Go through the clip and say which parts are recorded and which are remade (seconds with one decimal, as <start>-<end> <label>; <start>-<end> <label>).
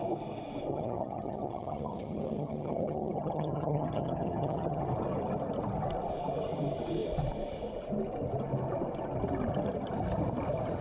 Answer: 0.0-0.7 recorded; 0.7-4.8 remade; 4.8-10.8 recorded